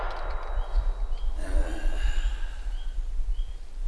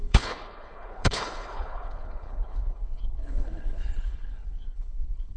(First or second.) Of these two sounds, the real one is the first